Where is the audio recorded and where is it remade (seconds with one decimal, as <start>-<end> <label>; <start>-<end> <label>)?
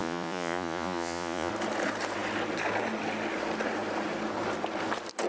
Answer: 0.0-1.5 remade; 1.5-5.3 recorded